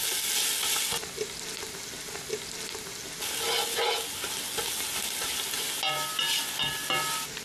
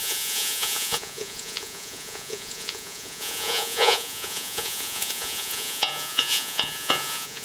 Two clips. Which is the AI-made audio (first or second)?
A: second